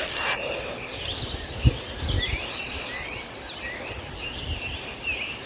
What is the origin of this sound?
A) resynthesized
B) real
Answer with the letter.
B